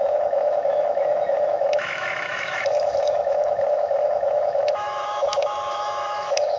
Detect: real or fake fake